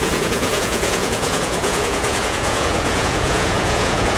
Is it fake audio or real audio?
fake